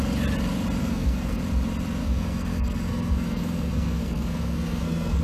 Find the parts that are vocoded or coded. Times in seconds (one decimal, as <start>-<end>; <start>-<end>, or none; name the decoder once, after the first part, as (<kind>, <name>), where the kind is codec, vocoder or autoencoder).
0.8-1.4 (codec, SNAC); 2.0-5.2